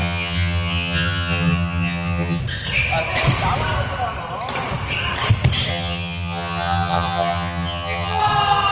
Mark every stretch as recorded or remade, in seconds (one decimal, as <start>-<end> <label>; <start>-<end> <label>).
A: 0.0-2.4 remade; 2.4-5.7 recorded; 5.7-8.2 remade; 8.2-8.7 recorded